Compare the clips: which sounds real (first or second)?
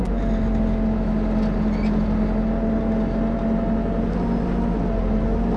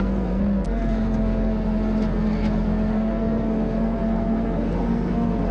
first